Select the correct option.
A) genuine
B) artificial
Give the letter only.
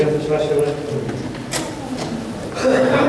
A